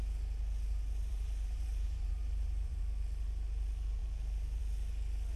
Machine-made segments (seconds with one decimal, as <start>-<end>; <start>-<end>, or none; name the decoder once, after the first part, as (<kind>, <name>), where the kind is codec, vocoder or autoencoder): 1.1-2.8 (vocoder, BigVGAN v2)